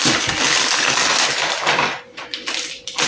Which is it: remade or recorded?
recorded